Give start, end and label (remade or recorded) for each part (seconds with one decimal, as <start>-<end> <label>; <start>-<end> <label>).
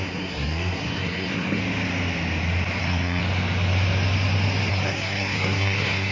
0.0-1.6 remade; 1.6-2.8 recorded; 2.8-3.2 remade; 3.2-4.7 recorded; 4.7-6.1 remade